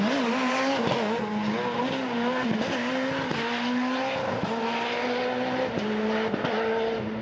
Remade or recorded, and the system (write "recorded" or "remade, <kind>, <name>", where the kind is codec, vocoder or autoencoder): recorded